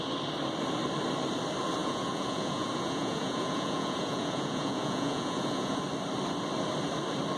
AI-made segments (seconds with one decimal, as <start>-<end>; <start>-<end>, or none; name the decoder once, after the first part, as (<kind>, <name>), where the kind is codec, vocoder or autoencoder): 1.8-5.8 (vocoder, Vocos)